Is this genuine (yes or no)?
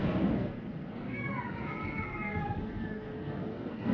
no